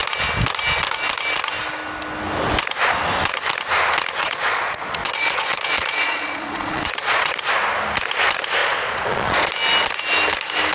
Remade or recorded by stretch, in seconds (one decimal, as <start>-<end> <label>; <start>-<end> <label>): 0.0-4.2 recorded; 4.2-7.5 remade; 7.5-8.6 recorded; 8.6-9.5 remade; 9.5-10.7 recorded